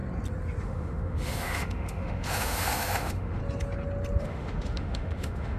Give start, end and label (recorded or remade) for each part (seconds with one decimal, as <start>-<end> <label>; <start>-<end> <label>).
0.0-0.6 recorded; 0.6-3.4 remade; 3.4-4.2 recorded; 4.2-5.6 remade